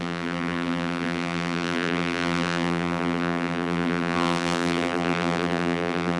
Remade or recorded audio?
remade